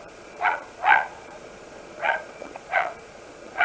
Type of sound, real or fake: fake